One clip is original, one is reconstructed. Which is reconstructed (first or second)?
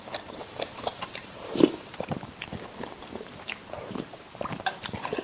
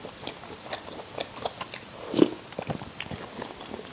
first